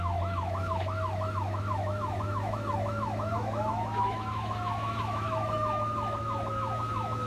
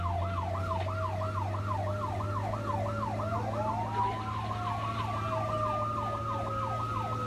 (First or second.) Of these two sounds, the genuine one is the second